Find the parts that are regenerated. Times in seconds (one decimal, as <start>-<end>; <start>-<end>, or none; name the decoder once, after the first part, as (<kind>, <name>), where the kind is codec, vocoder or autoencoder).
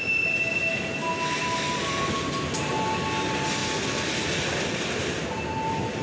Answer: none